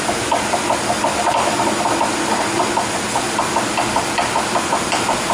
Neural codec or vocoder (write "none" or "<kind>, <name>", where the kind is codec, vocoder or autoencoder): none